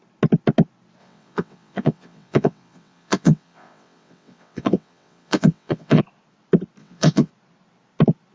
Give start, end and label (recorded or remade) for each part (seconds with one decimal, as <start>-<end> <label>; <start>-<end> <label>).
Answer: 0.0-1.0 recorded; 1.0-6.0 remade; 6.0-6.8 recorded; 6.8-7.3 remade; 7.3-8.3 recorded